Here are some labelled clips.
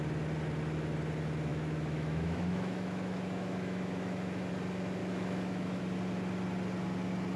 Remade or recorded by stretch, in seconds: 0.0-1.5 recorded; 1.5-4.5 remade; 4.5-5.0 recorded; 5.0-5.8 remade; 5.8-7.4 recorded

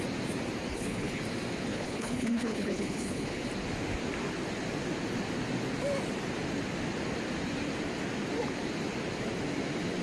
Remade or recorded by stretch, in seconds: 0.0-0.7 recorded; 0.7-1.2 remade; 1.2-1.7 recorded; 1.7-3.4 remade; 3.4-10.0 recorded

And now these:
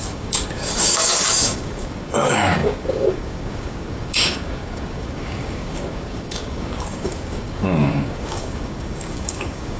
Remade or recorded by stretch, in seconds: 0.0-9.8 remade